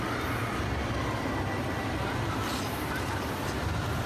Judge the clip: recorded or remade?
remade